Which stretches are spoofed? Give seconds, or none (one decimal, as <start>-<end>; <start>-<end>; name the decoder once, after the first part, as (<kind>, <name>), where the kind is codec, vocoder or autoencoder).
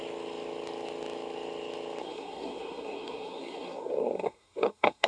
2.0-5.1 (codec, SNAC)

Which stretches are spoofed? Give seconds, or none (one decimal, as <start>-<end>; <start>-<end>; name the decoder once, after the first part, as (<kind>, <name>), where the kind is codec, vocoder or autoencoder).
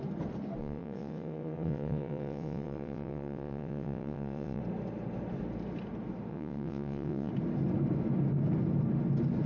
0.6-4.6 (vocoder, WaveNeXt); 6.3-7.3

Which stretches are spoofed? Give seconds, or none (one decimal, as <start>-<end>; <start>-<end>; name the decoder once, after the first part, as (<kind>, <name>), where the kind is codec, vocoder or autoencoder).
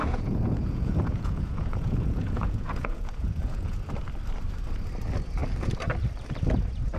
0.0-3.8 (vocoder, Vocos)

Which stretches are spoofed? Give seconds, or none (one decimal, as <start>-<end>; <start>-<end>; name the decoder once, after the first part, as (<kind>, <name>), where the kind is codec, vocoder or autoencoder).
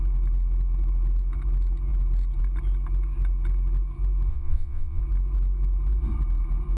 4.3-5.0 (vocoder, Vocos)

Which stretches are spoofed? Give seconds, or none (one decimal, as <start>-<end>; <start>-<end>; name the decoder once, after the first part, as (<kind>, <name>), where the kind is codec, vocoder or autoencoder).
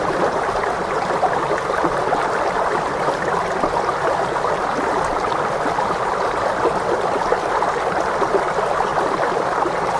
none